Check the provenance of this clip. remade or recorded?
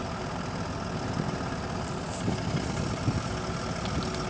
recorded